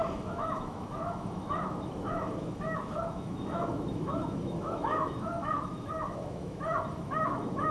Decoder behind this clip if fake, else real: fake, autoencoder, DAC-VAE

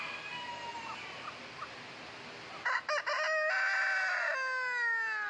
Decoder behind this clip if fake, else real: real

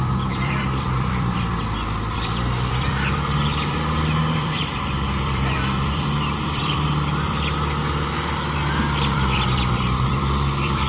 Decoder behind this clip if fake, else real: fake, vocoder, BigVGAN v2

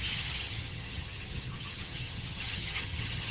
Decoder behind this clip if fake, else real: fake, vocoder, HiFi-GAN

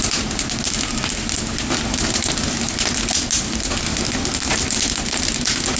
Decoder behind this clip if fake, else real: real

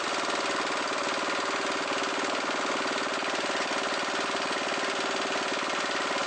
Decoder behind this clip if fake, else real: real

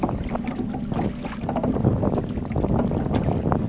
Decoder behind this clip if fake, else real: real